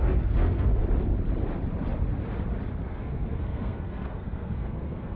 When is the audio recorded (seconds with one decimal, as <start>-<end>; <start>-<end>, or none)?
0.8-2.8